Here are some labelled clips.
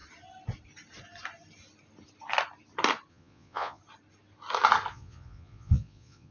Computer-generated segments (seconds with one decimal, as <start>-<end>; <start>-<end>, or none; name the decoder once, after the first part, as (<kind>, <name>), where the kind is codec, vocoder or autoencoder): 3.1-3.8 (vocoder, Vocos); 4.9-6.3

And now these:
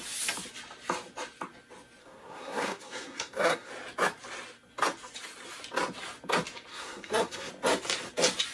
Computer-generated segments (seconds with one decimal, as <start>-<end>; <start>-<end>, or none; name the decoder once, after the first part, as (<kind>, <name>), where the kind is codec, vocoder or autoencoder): 2.0-3.7 (codec, SNAC); 6.7-7.5

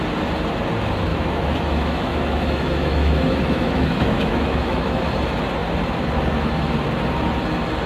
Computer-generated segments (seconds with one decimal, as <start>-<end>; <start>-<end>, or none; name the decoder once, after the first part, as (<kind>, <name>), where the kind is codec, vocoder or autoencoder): 1.1-5.0 (autoencoder, DAC-VAE)

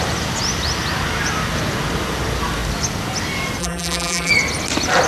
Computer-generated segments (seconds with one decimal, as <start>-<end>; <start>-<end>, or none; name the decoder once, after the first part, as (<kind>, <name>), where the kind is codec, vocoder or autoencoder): 3.6-4.3 (vocoder, BigVGAN v2)

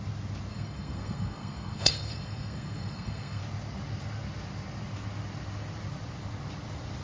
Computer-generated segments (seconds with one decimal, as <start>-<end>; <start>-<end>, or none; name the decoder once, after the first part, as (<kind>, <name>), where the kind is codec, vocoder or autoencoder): 0.5-3.4 (codec, SNAC)

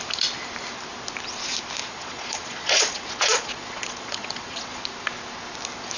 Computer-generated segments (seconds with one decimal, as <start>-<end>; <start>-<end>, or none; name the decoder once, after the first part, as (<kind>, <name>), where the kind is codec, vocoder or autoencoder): 1.8-4.8 (vocoder, Vocos)

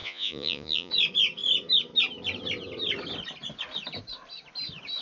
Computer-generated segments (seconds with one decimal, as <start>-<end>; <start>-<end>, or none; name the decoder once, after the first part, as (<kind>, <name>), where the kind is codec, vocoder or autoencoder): 0.0-0.9 (vocoder, Vocos)